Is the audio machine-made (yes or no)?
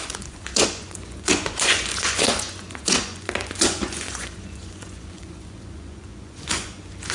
yes